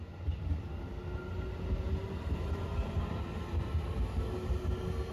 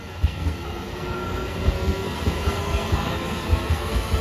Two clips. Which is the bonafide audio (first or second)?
first